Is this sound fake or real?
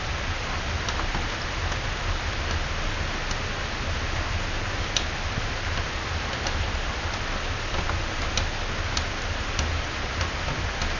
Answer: real